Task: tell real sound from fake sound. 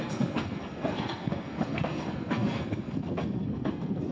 fake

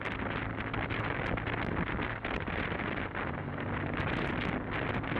real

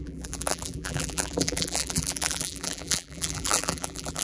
fake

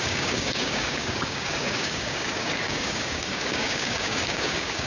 fake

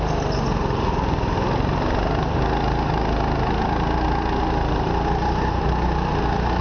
real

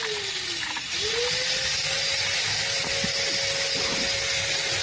real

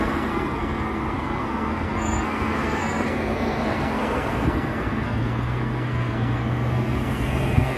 fake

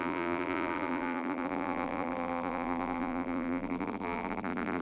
fake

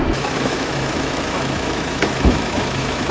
fake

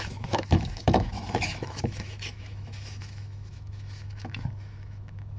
fake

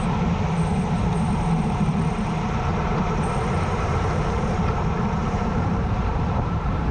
fake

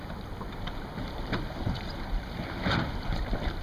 fake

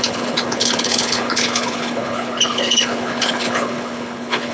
fake